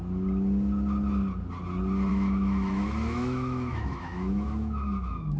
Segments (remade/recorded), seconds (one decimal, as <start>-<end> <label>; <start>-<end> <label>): 0.0-2.1 recorded; 2.1-5.4 remade

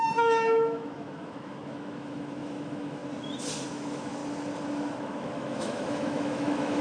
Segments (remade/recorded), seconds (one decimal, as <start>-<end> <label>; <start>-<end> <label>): 0.0-3.0 remade; 3.0-3.7 recorded; 3.7-4.2 remade; 4.2-5.0 recorded; 5.0-6.8 remade

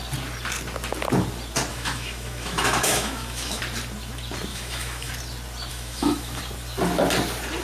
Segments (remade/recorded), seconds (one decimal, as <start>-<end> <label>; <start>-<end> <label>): 0.0-1.7 recorded; 1.7-3.6 remade; 3.6-4.5 recorded; 4.5-5.1 remade; 5.1-5.7 recorded; 5.7-6.4 remade; 6.4-7.6 recorded

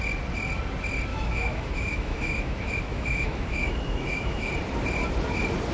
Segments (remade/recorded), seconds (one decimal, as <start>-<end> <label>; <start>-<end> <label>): 0.0-1.1 recorded; 1.1-4.5 remade; 4.5-5.7 recorded

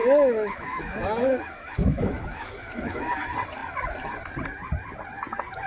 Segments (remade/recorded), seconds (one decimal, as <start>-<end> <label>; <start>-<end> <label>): 0.0-3.1 remade; 3.1-5.7 recorded

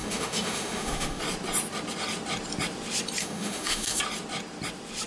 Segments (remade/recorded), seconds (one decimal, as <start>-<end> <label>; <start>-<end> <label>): 0.0-1.2 remade; 1.2-3.2 recorded; 3.2-4.0 remade; 4.0-5.1 recorded